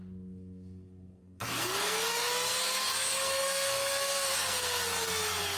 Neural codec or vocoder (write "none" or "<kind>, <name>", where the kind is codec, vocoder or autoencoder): codec, SNAC